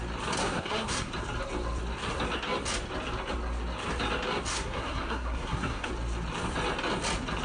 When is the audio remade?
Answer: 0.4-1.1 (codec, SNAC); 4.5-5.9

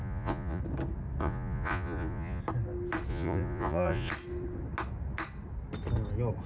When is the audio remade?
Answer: 0.0-0.6 (vocoder, Vocos); 1.2-2.4; 3.1-4.1

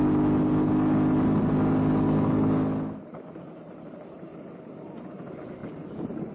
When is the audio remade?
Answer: none

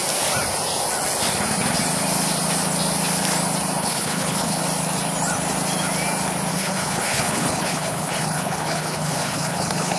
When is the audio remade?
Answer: 3.8-4.6 (codec, HILCodec); 6.5-10.0

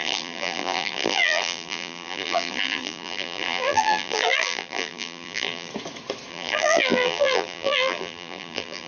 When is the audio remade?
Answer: 0.0-5.7 (vocoder, BigVGAN v2); 6.3-8.9